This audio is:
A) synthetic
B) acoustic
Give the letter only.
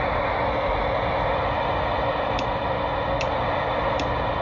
B